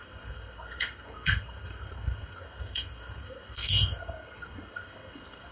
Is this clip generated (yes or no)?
yes